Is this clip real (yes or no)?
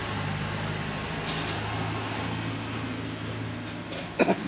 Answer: yes